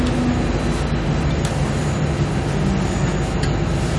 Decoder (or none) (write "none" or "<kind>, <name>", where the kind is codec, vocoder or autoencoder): none